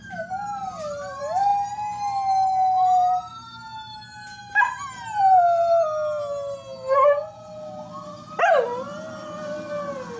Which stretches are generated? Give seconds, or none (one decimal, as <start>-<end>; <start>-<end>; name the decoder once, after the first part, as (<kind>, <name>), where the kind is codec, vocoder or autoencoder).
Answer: none